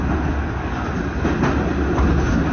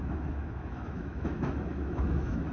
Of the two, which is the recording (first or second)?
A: first